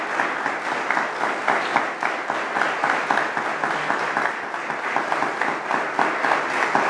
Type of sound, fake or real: real